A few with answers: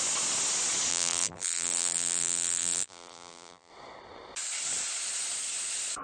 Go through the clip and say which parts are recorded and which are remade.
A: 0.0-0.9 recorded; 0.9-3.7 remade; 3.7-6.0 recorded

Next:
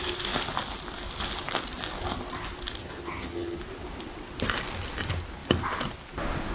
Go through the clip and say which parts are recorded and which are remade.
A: 0.0-2.8 recorded; 2.8-3.6 remade; 3.6-6.5 recorded

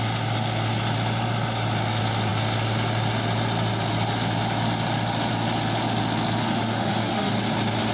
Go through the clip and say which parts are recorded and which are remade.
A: 0.0-6.4 recorded; 6.4-7.3 remade; 7.3-7.9 recorded